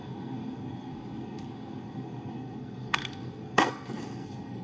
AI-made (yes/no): yes